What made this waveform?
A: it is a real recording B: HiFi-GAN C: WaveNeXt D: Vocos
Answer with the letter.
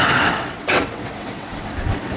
C